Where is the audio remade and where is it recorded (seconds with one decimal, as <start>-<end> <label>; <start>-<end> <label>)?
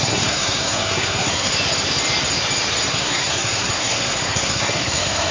0.0-1.5 remade; 1.5-2.9 recorded; 2.9-5.3 remade